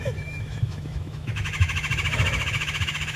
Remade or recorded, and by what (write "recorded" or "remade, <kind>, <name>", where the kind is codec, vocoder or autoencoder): remade, autoencoder, DAC-VAE